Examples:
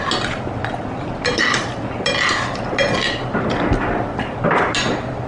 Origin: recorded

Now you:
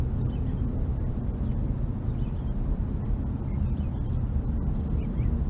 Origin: recorded